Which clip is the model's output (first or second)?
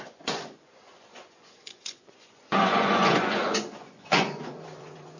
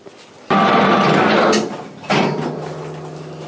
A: first